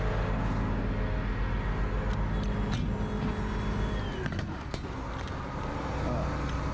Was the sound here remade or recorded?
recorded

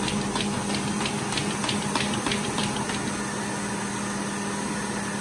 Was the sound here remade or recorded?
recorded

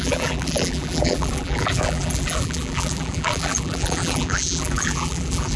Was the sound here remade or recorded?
remade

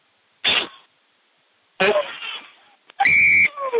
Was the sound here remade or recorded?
recorded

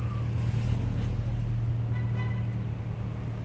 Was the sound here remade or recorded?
recorded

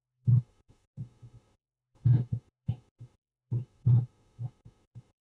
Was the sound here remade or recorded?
remade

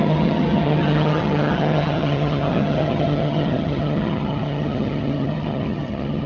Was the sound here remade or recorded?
remade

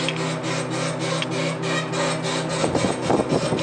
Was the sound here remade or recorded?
recorded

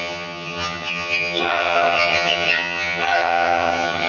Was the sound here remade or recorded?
remade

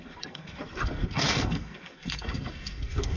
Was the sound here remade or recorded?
remade